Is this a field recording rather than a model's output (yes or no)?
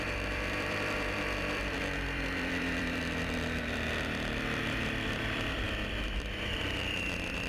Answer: no